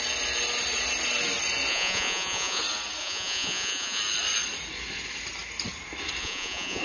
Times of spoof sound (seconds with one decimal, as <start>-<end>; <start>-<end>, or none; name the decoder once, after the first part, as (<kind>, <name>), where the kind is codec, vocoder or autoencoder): 1.7-2.6 (vocoder, Vocos); 3.0-4.0; 6.2-6.8